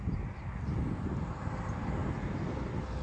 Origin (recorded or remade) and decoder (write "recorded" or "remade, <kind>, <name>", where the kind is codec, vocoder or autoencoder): recorded